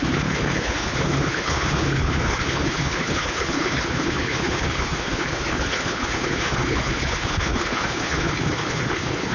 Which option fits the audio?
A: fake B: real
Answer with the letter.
A